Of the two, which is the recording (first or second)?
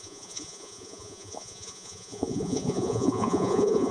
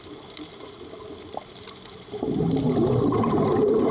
second